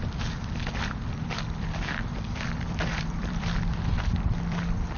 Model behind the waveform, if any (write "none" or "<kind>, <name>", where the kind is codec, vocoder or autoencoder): vocoder, BigVGAN v2